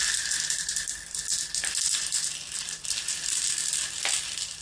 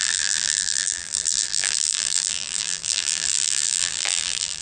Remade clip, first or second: second